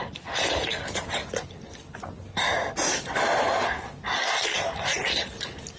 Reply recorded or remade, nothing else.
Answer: recorded